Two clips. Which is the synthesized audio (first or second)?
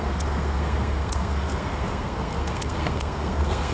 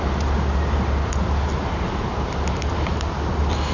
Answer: first